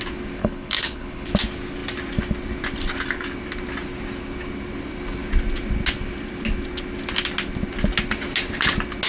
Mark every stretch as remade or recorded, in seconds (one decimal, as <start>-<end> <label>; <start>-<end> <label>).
0.0-0.4 recorded; 0.4-1.3 remade; 1.3-9.1 recorded